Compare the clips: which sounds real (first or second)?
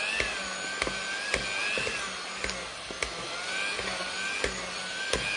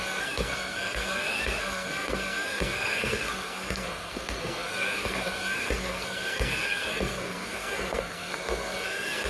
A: first